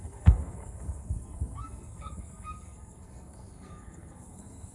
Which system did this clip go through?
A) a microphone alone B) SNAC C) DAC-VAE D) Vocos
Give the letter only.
B